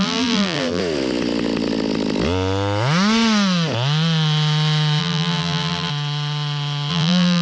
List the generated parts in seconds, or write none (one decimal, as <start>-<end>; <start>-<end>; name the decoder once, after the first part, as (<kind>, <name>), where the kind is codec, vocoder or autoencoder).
0.0-0.8 (vocoder, BigVGAN v2); 5.0-5.9; 6.9-7.4